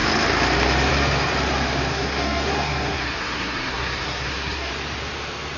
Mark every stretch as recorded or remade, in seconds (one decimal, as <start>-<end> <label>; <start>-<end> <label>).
0.0-1.9 recorded; 1.9-4.7 remade; 4.7-5.6 recorded